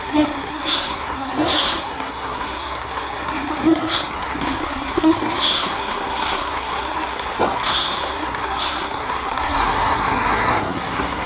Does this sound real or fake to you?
fake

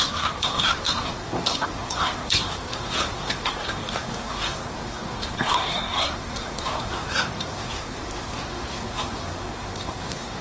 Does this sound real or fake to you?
fake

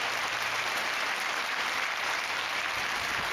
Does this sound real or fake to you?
real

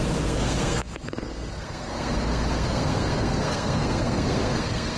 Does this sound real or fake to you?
fake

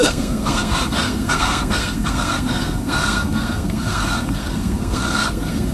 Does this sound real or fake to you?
fake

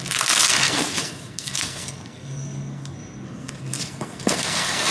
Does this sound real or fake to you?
fake